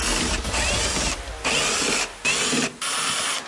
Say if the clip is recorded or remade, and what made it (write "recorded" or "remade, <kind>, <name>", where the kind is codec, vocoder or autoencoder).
recorded